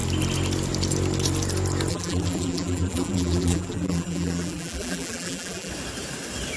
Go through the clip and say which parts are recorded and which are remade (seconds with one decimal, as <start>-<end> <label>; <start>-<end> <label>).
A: 0.0-1.9 recorded; 1.9-5.7 remade; 5.7-6.6 recorded